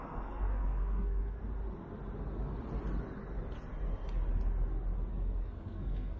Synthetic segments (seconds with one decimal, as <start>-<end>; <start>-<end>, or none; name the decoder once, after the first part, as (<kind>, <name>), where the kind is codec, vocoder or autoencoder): 0.0-1.4 (codec, SNAC); 5.1-6.2